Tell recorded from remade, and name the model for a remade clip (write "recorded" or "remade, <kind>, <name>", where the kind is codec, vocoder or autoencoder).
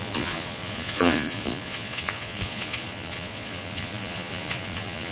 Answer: remade, vocoder, Vocos